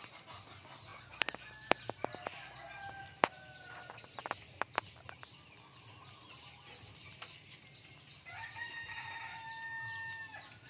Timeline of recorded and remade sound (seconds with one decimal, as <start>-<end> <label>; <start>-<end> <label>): 0.0-10.7 recorded

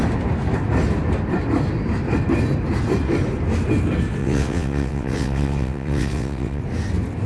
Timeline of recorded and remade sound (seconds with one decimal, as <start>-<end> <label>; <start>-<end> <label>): 0.0-4.2 recorded; 4.2-6.6 remade; 6.6-7.3 recorded

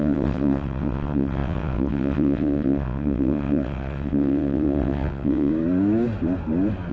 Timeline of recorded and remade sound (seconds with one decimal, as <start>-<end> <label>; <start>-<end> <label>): 0.0-5.5 remade; 5.5-6.9 recorded

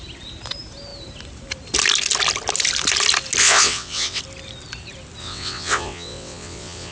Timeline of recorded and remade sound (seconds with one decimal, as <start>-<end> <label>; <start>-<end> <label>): 0.0-3.4 recorded; 3.4-4.2 remade; 4.2-5.2 recorded; 5.2-6.9 remade

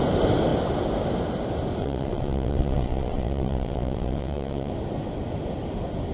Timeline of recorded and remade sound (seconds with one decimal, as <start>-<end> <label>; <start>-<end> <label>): 0.0-1.8 recorded; 1.8-4.7 remade; 4.7-6.1 recorded